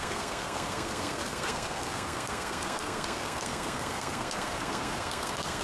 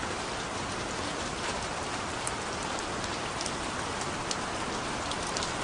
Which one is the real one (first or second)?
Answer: second